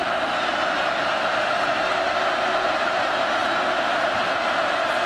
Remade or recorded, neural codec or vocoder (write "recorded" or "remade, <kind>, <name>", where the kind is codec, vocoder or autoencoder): recorded